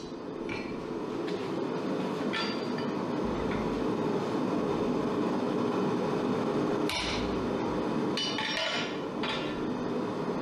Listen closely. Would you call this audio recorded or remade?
recorded